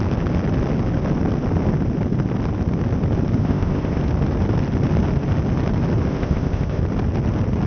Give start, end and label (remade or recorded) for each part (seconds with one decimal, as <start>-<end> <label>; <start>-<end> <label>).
0.0-3.4 recorded; 3.4-4.0 remade; 4.0-6.1 recorded; 6.1-6.8 remade; 6.8-7.7 recorded